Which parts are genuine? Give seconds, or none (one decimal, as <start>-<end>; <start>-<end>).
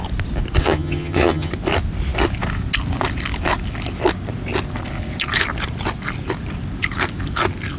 0.0-0.6; 1.5-7.8